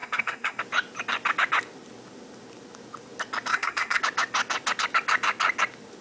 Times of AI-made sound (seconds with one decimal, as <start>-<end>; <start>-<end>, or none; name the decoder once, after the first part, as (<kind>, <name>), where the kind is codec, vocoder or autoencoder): 0.0-0.6 (codec, SNAC); 3.5-4.0